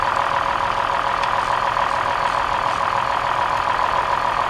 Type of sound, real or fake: real